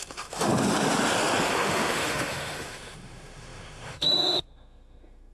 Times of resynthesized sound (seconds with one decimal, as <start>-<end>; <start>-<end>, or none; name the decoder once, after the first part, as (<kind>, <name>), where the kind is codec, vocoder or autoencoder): 0.0-0.5 (autoencoder, DAC-VAE); 1.5-5.3